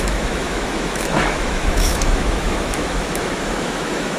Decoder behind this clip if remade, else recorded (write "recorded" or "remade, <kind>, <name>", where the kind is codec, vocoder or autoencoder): remade, autoencoder, DAC-VAE